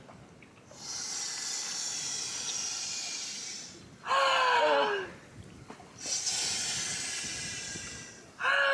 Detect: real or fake real